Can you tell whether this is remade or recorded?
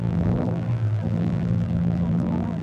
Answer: remade